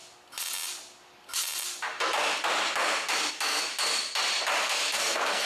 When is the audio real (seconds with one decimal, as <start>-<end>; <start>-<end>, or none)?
0.0-3.3; 3.7-4.6